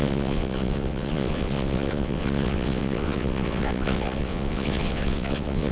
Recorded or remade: remade